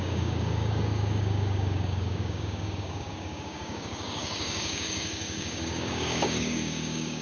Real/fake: fake